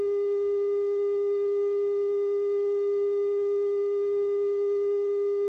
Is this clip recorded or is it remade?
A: remade